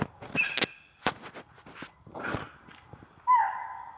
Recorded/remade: recorded